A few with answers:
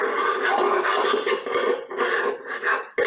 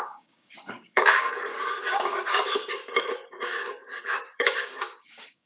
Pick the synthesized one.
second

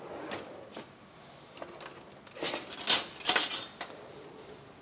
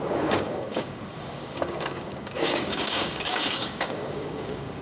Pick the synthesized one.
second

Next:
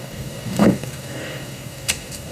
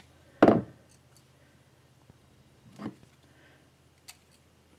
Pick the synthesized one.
first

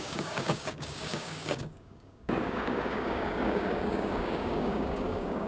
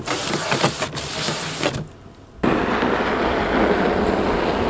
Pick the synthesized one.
first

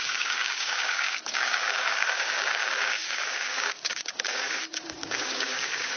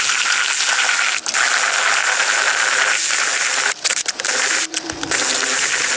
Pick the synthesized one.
first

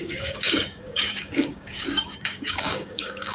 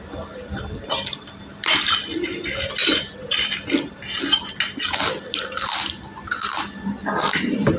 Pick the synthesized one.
first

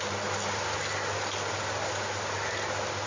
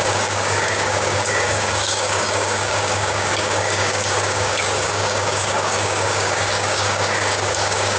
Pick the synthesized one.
second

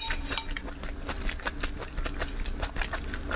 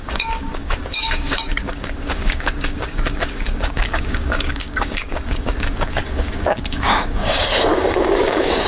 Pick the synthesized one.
second